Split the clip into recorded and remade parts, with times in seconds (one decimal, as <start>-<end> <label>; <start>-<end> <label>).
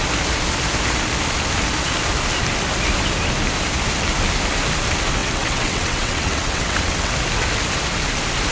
0.0-5.2 recorded; 5.2-7.1 remade; 7.1-8.5 recorded